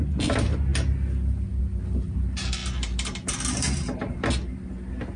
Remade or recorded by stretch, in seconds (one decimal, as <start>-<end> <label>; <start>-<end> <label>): 0.0-5.2 recorded